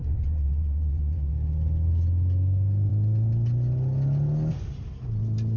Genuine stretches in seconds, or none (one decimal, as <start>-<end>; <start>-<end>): 1.3-5.6